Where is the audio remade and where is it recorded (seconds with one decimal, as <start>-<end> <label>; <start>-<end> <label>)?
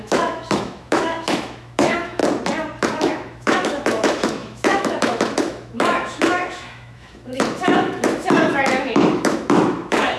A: 0.0-2.2 remade; 2.2-2.8 recorded; 2.8-10.2 remade